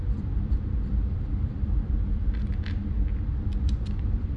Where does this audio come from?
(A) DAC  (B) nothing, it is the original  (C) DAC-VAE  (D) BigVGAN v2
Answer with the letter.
D